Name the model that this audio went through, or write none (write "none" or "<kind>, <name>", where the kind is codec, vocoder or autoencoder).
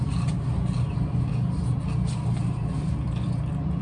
none